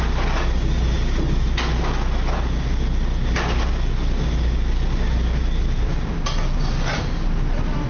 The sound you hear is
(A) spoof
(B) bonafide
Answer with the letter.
B